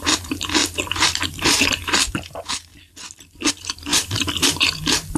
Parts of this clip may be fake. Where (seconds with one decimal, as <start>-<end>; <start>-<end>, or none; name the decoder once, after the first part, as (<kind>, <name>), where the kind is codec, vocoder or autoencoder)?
0.0-2.7 (vocoder, BigVGAN v2); 3.5-5.2